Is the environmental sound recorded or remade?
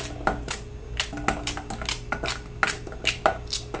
recorded